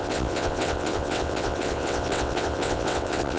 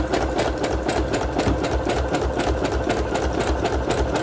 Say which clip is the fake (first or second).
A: first